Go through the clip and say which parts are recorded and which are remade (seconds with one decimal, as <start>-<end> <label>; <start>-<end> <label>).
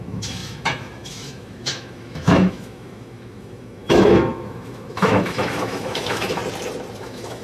0.0-6.4 remade; 6.4-7.0 recorded; 7.0-7.4 remade